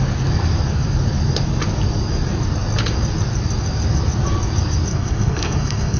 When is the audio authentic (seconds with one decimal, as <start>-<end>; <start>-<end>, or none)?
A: 0.0-4.9